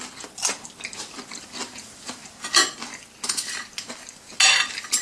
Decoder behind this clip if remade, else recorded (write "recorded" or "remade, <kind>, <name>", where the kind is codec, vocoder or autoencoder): recorded